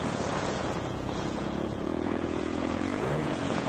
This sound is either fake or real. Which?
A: fake